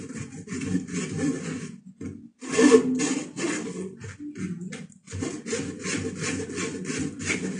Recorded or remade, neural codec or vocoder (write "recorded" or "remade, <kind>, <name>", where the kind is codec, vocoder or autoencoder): recorded